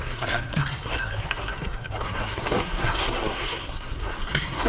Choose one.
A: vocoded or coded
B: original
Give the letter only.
A